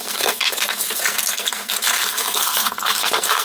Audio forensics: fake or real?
fake